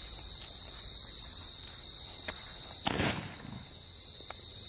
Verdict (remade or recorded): recorded